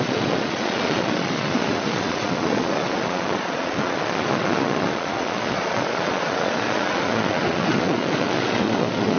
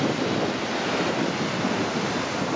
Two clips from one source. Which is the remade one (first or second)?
first